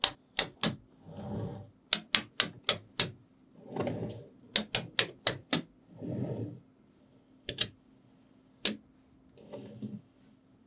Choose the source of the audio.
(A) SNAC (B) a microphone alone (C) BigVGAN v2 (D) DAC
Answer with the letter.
B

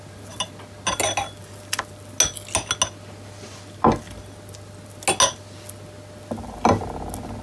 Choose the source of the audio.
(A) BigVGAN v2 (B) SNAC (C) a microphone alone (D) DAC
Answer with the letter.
C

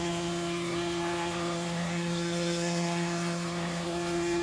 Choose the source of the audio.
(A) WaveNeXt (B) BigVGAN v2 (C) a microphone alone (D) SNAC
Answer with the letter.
D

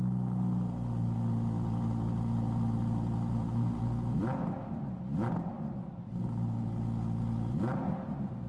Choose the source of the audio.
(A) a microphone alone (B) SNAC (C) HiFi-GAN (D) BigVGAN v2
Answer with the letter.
A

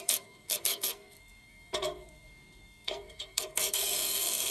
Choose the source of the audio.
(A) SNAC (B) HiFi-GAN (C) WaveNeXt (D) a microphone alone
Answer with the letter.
A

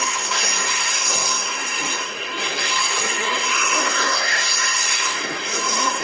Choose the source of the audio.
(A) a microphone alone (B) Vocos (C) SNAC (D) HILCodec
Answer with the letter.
C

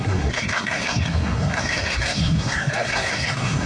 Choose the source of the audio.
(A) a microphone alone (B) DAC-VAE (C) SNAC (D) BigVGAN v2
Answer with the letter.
C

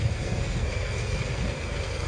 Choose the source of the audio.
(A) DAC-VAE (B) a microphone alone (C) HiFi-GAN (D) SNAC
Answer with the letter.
D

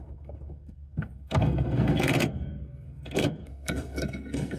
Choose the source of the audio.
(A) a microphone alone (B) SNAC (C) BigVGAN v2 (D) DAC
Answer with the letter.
B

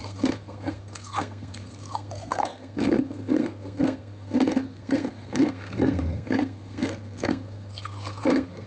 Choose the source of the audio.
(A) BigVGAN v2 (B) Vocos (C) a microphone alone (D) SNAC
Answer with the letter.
D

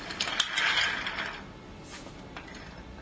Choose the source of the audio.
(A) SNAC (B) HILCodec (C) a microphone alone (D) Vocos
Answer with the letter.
C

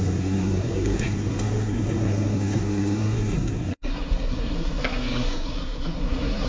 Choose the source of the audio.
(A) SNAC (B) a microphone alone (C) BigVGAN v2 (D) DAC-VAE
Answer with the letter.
A